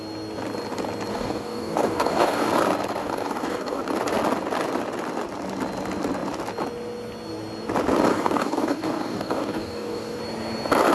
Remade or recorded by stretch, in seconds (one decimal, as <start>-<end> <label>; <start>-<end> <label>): 0.0-1.1 recorded; 1.1-2.5 remade; 2.5-3.0 recorded; 3.0-3.8 remade; 3.8-8.1 recorded; 8.1-10.2 remade; 10.2-10.9 recorded